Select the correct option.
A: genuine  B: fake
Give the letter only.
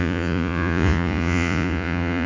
B